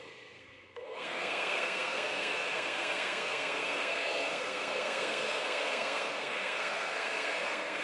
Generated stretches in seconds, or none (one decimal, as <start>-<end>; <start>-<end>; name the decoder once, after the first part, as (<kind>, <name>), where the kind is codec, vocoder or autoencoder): 0.0-7.8 (codec, SNAC)